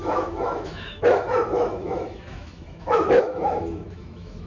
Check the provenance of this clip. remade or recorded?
remade